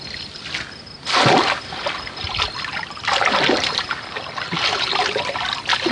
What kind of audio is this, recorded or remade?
recorded